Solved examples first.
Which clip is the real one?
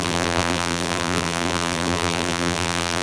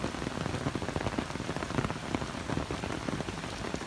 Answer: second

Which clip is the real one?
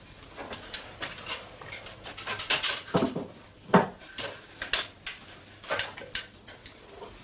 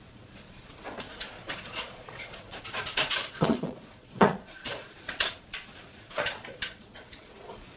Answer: first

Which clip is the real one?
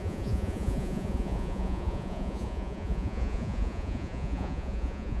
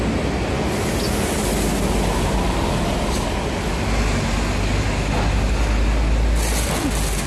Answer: second